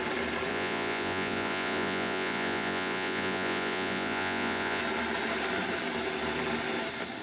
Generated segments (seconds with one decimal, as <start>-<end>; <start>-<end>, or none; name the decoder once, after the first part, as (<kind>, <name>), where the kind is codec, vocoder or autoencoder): 0.5-4.8 (vocoder, Vocos)